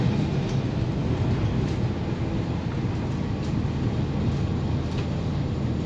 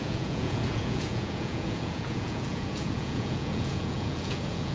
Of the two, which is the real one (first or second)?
first